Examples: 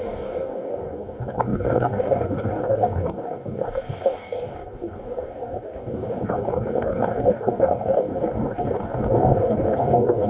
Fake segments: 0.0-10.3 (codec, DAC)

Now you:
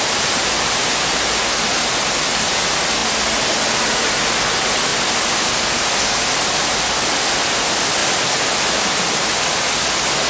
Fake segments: 3.0-4.0 (vocoder, BigVGAN v2); 4.9-5.5; 8.0-8.5

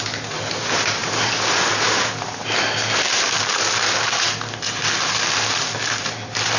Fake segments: none